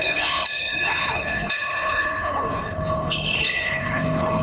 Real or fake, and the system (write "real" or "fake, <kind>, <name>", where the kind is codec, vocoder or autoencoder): fake, codec, HILCodec